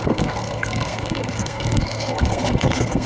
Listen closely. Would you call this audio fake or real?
fake